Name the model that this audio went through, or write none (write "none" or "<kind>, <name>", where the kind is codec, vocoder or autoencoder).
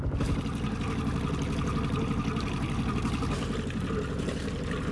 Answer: none